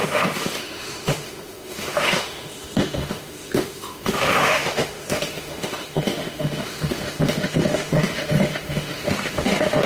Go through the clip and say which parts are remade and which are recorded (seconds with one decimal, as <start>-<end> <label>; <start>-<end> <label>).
0.0-9.9 remade

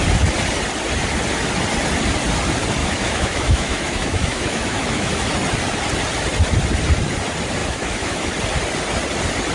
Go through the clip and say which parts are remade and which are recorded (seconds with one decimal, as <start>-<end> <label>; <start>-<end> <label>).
0.0-2.8 recorded; 2.8-5.1 remade; 5.1-7.6 recorded; 7.6-8.3 remade; 8.3-9.5 recorded

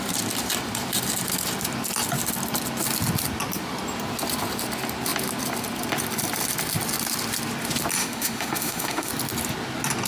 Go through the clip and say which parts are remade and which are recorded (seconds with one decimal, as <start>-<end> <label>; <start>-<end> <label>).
0.0-8.0 recorded; 8.0-9.1 remade; 9.1-10.1 recorded

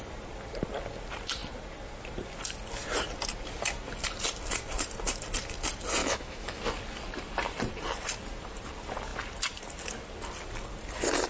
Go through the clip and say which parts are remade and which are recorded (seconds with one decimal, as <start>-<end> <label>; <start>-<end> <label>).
0.0-6.0 recorded; 6.0-6.6 remade; 6.6-11.3 recorded

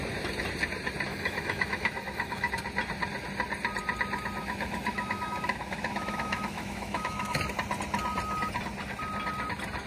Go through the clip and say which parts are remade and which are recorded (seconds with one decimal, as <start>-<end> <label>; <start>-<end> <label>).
0.0-1.1 recorded; 1.1-2.5 remade; 2.5-4.4 recorded; 4.4-7.4 remade; 7.4-9.9 recorded

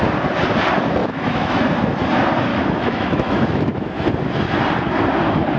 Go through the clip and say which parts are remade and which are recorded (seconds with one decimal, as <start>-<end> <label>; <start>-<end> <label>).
0.0-1.0 recorded; 1.0-1.7 remade; 1.7-2.5 recorded; 2.5-4.1 remade; 4.1-5.6 recorded